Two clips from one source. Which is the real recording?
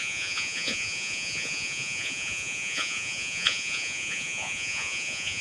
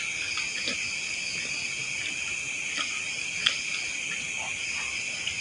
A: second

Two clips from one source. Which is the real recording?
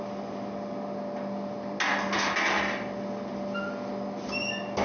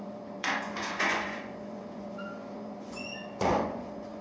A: first